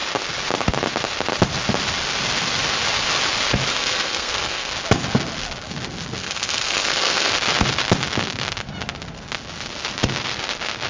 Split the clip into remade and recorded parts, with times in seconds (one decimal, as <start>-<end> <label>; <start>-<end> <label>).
0.0-3.7 recorded; 3.7-4.7 remade; 4.7-6.2 recorded; 6.2-7.3 remade; 7.3-10.9 recorded